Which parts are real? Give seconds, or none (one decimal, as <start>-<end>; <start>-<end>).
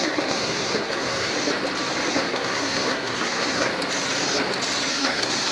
1.3-2.1; 3.7-4.9